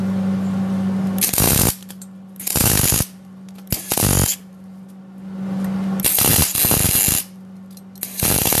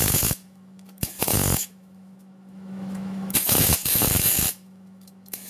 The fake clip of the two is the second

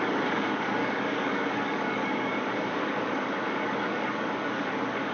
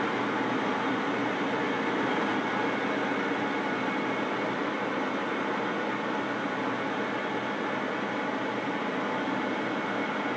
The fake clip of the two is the first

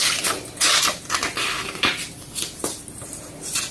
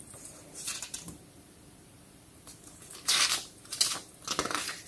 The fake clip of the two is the second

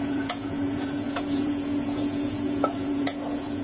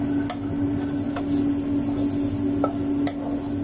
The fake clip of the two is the first